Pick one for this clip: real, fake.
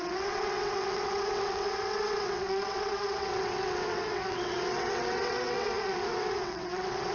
fake